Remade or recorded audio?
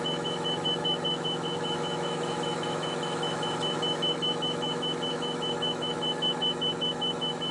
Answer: remade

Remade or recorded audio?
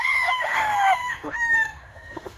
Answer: remade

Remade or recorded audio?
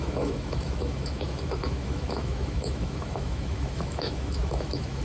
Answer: remade